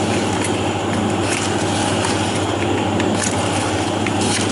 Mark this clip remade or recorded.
recorded